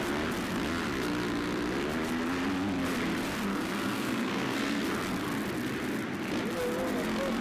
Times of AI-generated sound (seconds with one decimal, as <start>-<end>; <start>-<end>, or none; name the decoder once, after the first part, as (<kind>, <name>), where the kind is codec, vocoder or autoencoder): 3.5-4.8 (codec, SNAC)